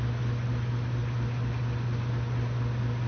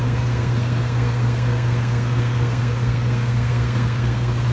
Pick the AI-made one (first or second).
second